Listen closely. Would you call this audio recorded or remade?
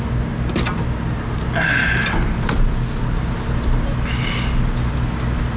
recorded